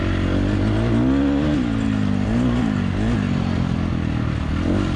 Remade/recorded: recorded